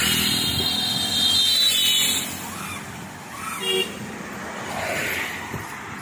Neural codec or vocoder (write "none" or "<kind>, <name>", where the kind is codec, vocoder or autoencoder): none